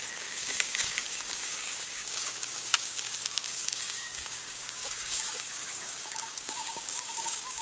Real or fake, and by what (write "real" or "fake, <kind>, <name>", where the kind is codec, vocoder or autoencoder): fake, codec, DAC